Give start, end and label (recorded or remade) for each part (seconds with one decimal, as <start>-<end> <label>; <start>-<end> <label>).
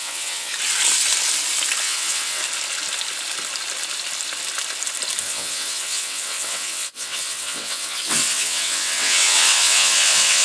0.0-0.5 remade; 0.5-1.8 recorded; 1.8-2.4 remade; 2.4-5.2 recorded; 5.2-10.4 remade